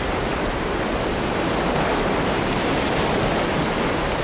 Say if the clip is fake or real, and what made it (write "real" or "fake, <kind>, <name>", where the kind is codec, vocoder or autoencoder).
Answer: real